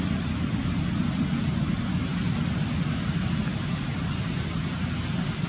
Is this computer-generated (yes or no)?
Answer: no